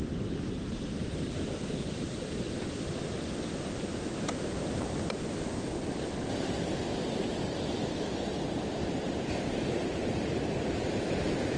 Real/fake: fake